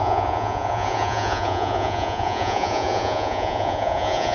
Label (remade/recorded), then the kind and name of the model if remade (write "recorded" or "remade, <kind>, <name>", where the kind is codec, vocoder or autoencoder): remade, vocoder, Vocos